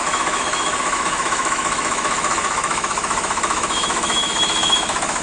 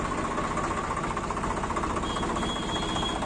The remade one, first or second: first